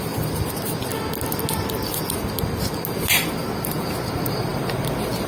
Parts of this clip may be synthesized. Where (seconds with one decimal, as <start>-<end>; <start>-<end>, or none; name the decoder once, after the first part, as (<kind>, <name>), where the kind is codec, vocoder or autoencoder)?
0.0-0.9 (vocoder, BigVGAN v2); 4.1-5.3